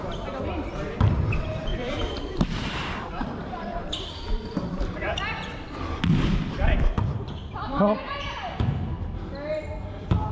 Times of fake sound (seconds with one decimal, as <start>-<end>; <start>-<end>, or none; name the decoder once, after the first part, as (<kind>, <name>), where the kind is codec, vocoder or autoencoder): 1.7-5.1 (vocoder, BigVGAN v2); 7.4-8.1